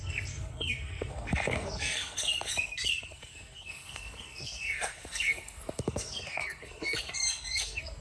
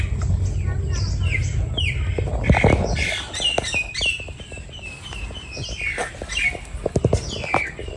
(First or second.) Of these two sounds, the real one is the second